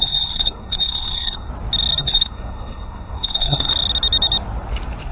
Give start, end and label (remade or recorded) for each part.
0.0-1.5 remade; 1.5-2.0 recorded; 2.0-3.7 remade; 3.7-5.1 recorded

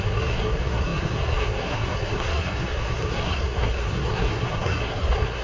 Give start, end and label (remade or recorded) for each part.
0.0-5.4 remade